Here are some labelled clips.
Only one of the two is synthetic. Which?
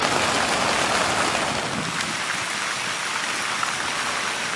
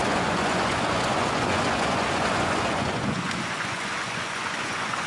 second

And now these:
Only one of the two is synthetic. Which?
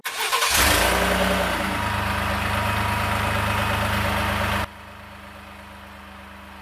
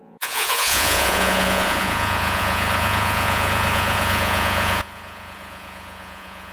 second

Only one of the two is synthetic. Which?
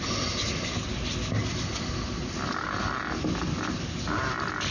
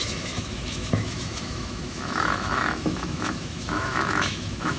second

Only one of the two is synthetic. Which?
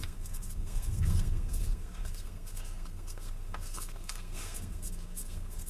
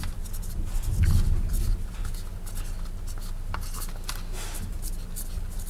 first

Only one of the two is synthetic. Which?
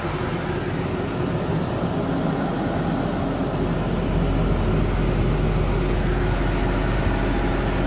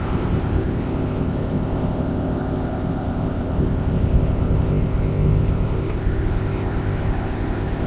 second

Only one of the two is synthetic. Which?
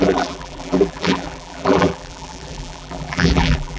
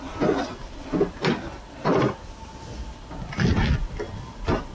first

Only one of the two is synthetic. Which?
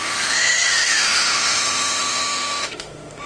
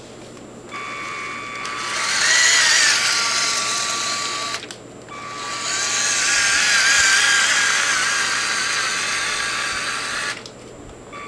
first